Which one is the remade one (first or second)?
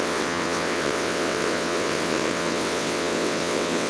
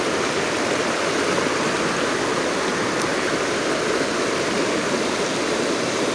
first